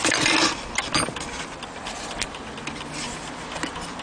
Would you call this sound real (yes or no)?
yes